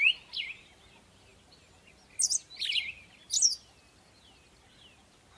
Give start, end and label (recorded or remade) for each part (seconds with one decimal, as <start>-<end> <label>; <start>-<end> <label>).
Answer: 0.0-5.4 recorded